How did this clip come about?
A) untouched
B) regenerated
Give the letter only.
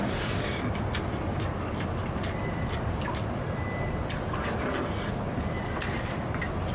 A